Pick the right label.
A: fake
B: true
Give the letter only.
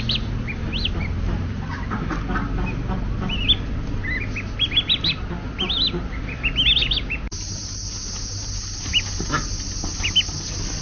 B